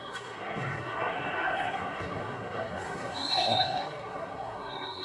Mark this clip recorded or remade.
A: remade